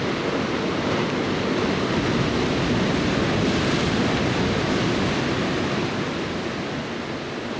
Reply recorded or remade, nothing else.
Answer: recorded